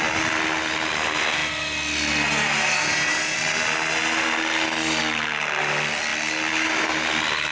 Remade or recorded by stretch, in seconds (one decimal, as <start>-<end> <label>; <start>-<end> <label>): 0.0-7.5 recorded